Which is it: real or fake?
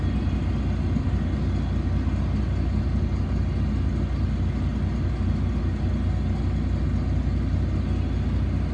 real